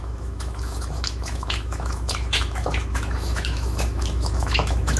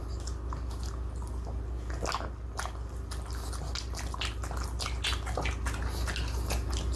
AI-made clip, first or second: first